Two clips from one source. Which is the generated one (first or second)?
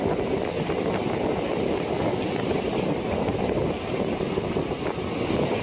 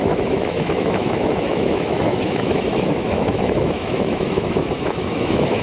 second